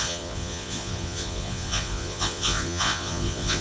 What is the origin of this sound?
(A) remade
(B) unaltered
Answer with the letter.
A